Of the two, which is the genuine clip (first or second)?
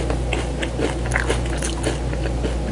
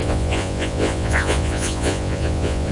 first